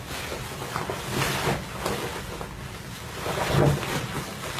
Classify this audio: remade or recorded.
recorded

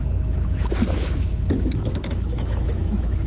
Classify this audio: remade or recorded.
remade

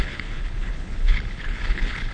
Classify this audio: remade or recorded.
remade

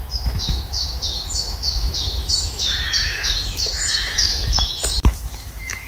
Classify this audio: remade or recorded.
remade